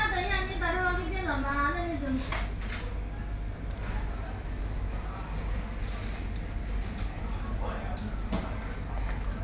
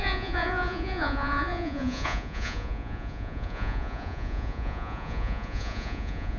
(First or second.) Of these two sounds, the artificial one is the second